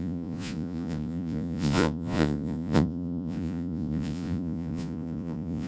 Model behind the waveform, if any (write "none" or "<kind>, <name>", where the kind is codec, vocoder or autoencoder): vocoder, Vocos